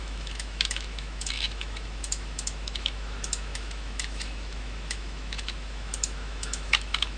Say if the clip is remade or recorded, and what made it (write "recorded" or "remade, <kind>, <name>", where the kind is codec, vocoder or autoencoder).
remade, autoencoder, DAC-VAE